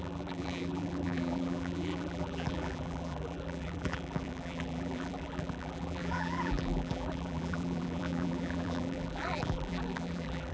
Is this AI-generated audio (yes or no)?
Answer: yes